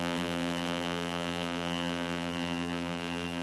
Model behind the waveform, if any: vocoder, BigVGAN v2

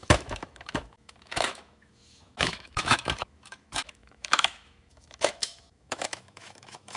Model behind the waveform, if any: autoencoder, DAC-VAE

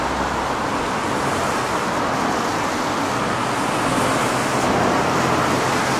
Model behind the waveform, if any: none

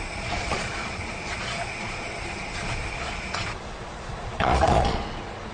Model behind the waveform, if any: vocoder, Vocos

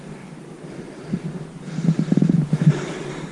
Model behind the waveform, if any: vocoder, BigVGAN v2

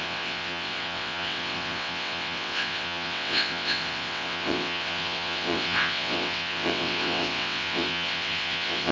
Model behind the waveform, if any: vocoder, WaveNeXt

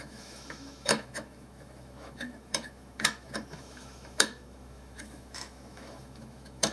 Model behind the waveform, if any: autoencoder, DAC-VAE